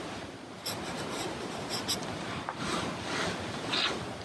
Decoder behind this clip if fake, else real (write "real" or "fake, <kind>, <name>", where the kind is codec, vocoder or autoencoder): real